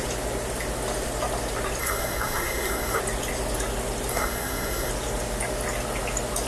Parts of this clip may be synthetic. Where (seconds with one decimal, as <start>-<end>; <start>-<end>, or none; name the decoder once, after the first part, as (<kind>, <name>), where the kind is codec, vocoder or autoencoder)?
1.8-3.0 (codec, SNAC); 4.1-4.9